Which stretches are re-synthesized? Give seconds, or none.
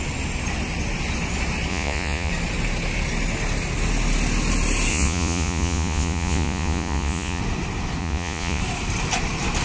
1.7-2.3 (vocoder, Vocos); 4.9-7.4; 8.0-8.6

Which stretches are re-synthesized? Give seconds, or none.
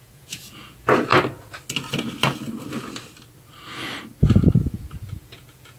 0.0-1.1 (vocoder, Vocos); 4.6-5.8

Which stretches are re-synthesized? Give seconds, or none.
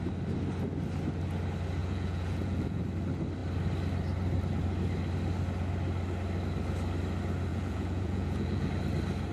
1.8-2.8 (vocoder, Vocos); 7.5-8.7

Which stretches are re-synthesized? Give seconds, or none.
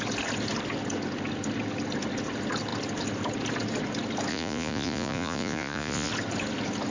4.3-6.1 (vocoder, Vocos)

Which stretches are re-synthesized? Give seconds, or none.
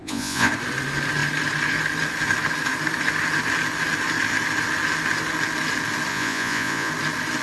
0.0-0.5 (vocoder, Vocos); 6.1-6.9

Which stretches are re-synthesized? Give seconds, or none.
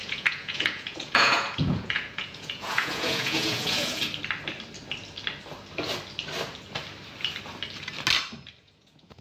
0.0-4.0 (vocoder, Vocos); 8.6-9.2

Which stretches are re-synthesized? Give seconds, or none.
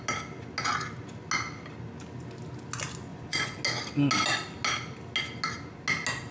3.1-3.6 (vocoder, Vocos)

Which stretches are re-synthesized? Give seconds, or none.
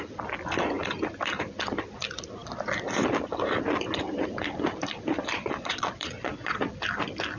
5.3-6.6 (vocoder, Vocos)